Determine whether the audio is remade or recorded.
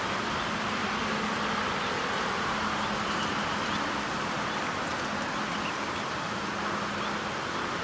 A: recorded